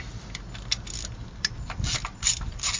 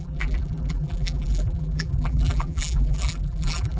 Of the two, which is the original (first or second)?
first